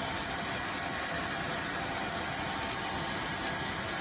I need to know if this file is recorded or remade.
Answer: recorded